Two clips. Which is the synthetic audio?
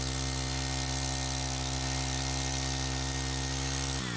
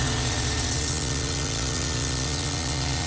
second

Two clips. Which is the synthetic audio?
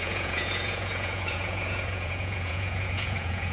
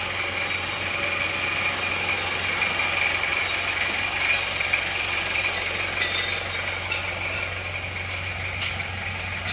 first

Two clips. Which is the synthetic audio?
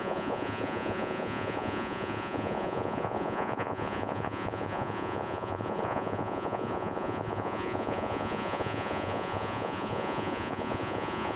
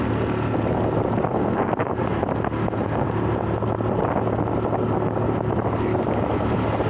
first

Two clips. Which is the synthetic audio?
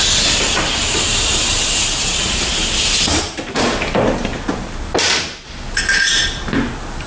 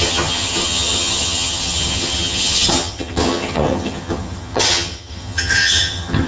second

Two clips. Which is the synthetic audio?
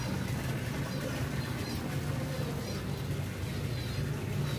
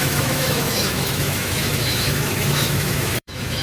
second